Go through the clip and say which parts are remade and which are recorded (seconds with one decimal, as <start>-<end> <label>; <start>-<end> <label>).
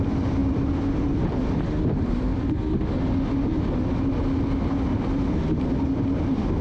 0.0-6.6 recorded